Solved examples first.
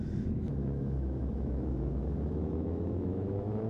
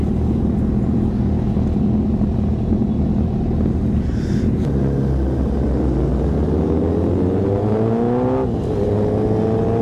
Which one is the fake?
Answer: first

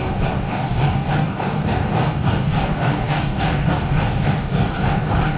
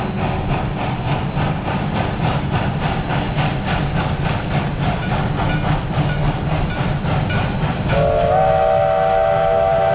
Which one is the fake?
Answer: first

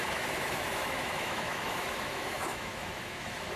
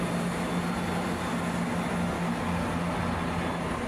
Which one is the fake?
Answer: first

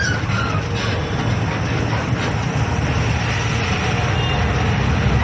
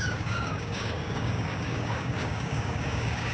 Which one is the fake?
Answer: second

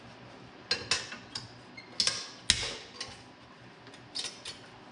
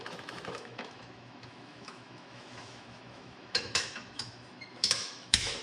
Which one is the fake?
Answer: second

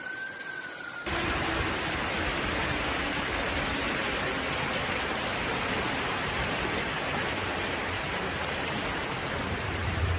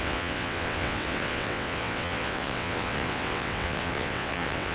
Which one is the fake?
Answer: second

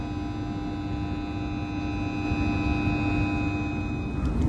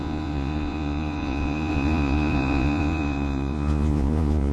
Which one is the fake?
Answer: second